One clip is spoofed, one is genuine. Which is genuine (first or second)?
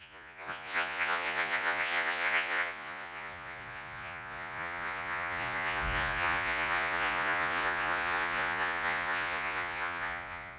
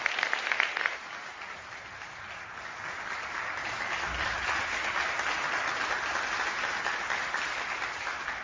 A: second